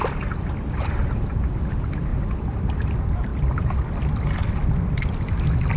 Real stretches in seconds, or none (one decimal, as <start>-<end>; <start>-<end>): 0.0-5.8